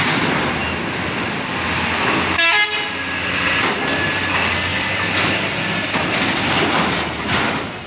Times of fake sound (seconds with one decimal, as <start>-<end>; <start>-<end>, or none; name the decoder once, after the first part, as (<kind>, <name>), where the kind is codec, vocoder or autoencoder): 4.7-7.0 (vocoder, BigVGAN v2)

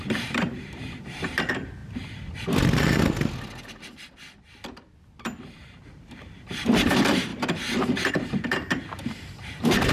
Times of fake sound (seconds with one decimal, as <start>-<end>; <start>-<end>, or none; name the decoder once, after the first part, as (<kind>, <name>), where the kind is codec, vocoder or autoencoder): 0.0-1.8 (vocoder, BigVGAN v2); 5.2-9.9

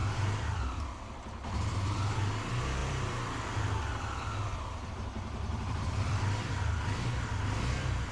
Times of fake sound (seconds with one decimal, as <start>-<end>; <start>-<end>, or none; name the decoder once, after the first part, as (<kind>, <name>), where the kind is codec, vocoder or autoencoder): 0.0-0.6 (vocoder, BigVGAN v2); 2.8-7.0

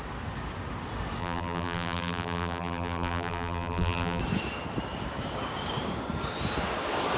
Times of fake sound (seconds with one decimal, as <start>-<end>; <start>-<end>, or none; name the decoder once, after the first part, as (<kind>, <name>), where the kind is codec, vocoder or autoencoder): 1.2-4.2 (vocoder, BigVGAN v2)